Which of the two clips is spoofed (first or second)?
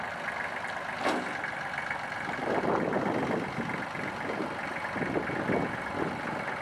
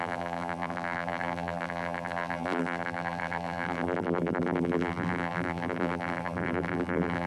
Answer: second